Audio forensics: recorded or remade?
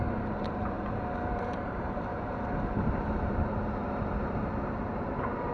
remade